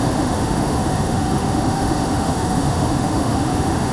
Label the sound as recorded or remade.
remade